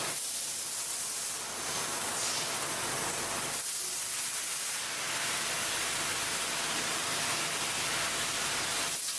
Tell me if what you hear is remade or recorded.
recorded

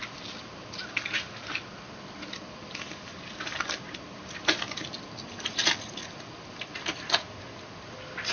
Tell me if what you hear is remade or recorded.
recorded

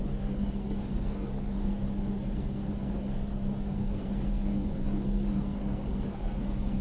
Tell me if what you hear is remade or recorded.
remade